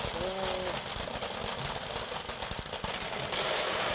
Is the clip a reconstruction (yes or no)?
no